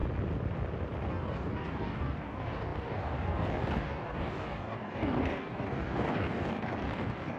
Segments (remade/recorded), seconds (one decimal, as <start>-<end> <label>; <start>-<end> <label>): 0.0-1.1 recorded; 1.1-7.4 remade